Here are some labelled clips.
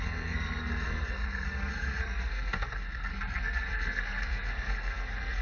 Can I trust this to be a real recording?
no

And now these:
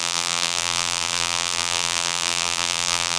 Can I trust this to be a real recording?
no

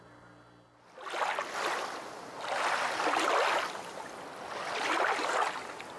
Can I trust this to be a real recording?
yes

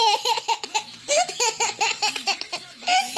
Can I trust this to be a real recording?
no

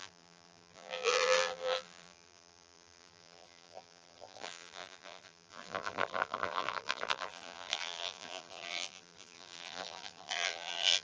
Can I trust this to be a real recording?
no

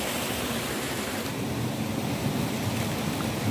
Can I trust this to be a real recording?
yes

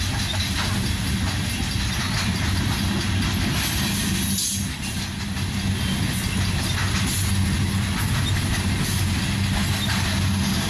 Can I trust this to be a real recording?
yes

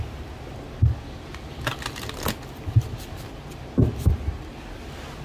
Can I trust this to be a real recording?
yes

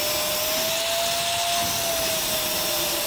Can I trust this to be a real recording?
yes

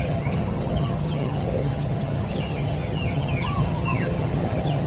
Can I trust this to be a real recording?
no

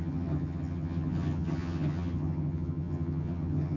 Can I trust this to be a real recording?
no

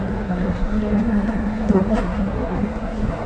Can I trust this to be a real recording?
no